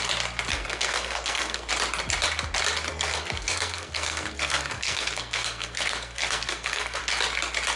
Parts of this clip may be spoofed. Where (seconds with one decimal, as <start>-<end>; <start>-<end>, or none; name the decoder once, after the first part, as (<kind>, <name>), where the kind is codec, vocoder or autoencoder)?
0.5-1.7 (codec, SNAC); 2.9-7.0